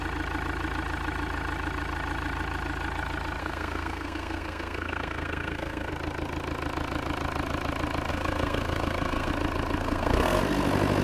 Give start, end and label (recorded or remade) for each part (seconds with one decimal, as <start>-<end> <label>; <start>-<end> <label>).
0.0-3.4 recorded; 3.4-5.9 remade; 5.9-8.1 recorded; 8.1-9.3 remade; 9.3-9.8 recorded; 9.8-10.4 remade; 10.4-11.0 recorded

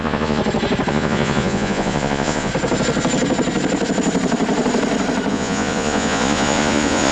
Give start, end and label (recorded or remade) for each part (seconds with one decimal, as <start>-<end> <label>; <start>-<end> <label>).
0.0-0.4 remade; 0.4-0.9 recorded; 0.9-2.5 remade; 2.5-5.3 recorded; 5.3-7.1 remade

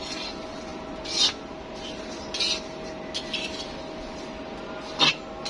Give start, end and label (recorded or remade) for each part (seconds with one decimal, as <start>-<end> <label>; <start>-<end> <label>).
0.0-5.5 recorded